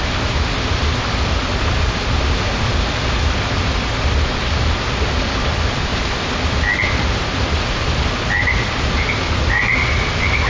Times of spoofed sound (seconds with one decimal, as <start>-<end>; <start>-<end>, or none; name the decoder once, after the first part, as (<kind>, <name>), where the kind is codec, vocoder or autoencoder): 0.0-5.9 (vocoder, BigVGAN v2)